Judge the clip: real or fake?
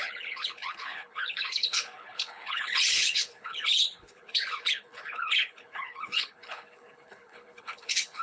fake